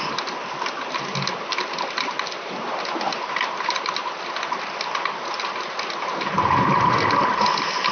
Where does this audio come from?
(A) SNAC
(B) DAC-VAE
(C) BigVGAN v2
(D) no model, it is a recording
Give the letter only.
D